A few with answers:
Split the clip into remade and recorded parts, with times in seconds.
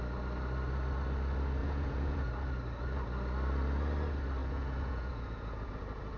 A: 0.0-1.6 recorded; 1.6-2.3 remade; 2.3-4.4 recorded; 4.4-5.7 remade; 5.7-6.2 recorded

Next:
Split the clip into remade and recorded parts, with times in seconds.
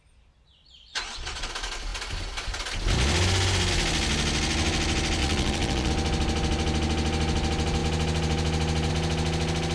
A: 0.0-0.9 recorded; 0.9-1.5 remade; 1.5-5.2 recorded; 5.2-5.9 remade; 5.9-9.7 recorded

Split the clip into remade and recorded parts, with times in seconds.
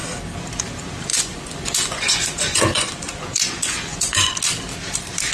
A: 0.0-1.1 recorded; 1.1-4.3 remade; 4.3-5.3 recorded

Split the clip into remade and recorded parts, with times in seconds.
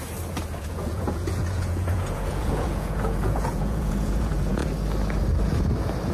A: 0.0-0.6 recorded; 0.6-4.6 remade; 4.6-6.1 recorded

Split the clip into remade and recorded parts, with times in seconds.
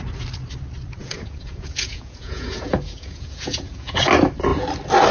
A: 0.0-1.0 recorded; 1.0-4.1 remade; 4.1-5.1 recorded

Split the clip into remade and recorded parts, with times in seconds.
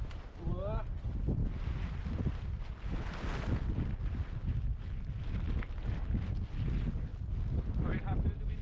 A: 0.0-8.6 recorded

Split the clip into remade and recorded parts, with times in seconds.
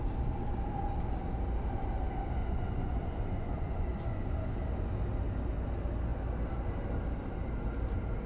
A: 0.0-2.4 recorded; 2.4-4.5 remade; 4.5-8.3 recorded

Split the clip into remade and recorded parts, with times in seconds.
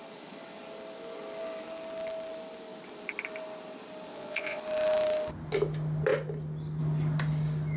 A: 0.0-4.1 recorded; 4.1-4.6 remade; 4.6-7.8 recorded